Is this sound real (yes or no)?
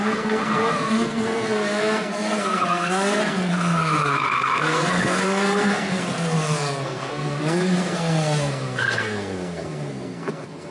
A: no